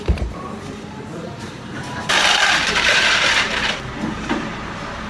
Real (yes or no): no